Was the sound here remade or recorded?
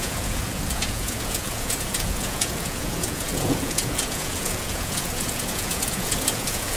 remade